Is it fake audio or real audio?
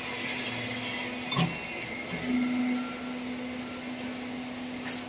real